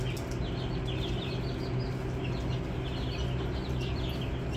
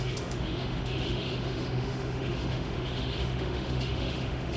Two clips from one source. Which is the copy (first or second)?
second